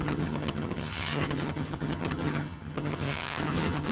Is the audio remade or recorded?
remade